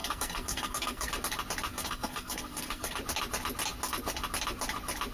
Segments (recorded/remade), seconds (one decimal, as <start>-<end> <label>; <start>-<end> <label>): 0.0-1.2 remade; 1.2-1.7 recorded; 1.7-3.0 remade; 3.0-5.1 recorded